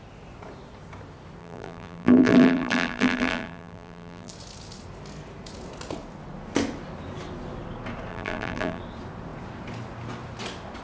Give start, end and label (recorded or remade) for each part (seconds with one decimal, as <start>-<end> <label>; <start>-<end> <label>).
0.0-1.4 recorded; 1.4-4.3 remade; 4.3-8.1 recorded; 8.1-8.8 remade; 8.8-10.8 recorded

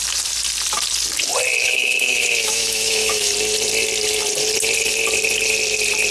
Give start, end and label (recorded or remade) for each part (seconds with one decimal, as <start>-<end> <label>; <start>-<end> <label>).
0.0-1.6 recorded; 1.6-3.3 remade; 3.3-6.1 recorded

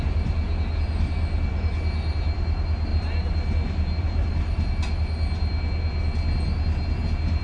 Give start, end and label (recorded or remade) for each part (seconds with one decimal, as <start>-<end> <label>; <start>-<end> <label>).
0.0-7.4 recorded

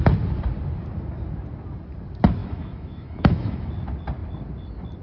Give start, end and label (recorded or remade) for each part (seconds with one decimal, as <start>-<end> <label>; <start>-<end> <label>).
0.0-2.4 recorded; 2.4-3.7 remade; 3.7-5.0 recorded

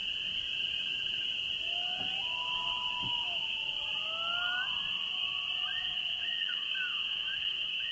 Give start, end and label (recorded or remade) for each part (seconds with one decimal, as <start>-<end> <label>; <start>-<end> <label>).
0.0-3.1 recorded; 3.1-3.6 remade; 3.6-5.8 recorded; 5.8-7.9 remade

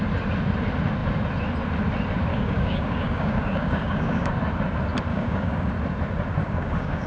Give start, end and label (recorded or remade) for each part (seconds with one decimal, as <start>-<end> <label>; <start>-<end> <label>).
0.0-2.3 recorded; 2.3-4.3 remade; 4.3-5.1 recorded; 5.1-5.7 remade; 5.7-6.4 recorded; 6.4-7.1 remade

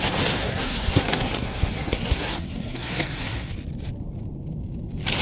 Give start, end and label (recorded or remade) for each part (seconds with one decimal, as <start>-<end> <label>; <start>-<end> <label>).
0.0-0.4 recorded; 0.4-3.5 remade; 3.5-5.2 recorded